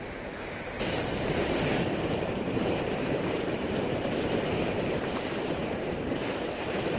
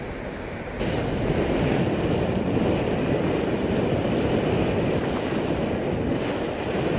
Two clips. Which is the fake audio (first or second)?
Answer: first